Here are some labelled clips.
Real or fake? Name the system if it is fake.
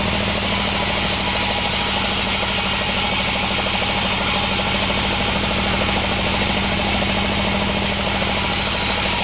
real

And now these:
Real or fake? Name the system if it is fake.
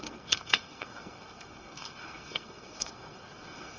fake, codec, SNAC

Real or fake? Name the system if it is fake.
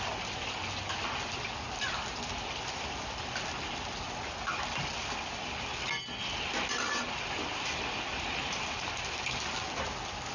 real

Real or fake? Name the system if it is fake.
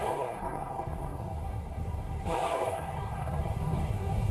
fake, codec, SNAC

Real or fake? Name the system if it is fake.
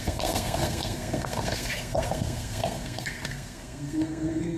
fake, codec, SNAC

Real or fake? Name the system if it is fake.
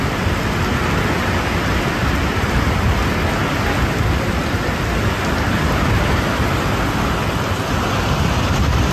real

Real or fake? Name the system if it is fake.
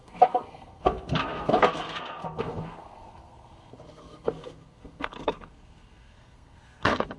fake, codec, SNAC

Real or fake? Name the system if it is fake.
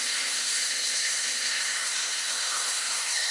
fake, codec, SNAC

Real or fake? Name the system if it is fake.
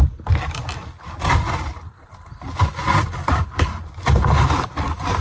real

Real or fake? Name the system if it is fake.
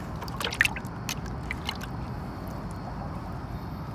real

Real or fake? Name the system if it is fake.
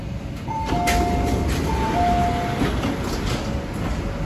real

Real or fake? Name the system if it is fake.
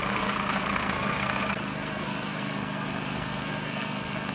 fake, codec, SNAC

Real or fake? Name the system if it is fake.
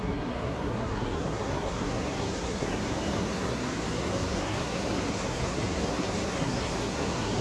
fake, codec, SNAC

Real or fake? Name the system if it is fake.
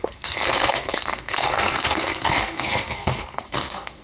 fake, codec, SNAC